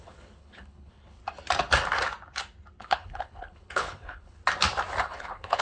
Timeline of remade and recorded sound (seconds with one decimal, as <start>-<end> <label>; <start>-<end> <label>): 0.0-1.2 remade; 1.2-2.8 recorded; 2.8-4.4 remade; 4.4-5.0 recorded; 5.0-5.6 remade